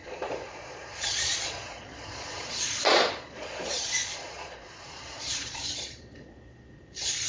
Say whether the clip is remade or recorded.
remade